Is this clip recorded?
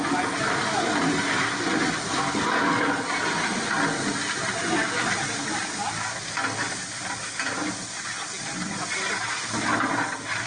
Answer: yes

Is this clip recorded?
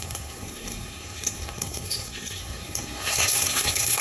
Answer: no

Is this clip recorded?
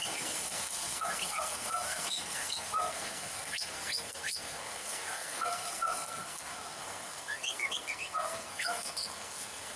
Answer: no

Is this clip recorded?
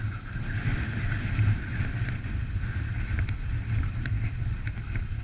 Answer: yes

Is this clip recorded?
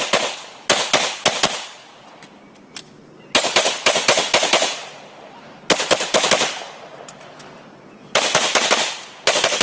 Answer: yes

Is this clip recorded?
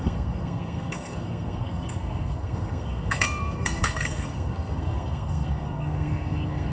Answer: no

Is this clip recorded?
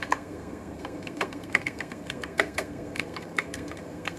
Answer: no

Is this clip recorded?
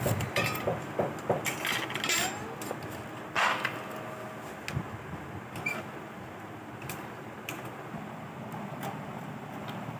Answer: yes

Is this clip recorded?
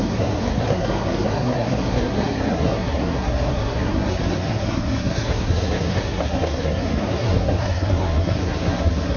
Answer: no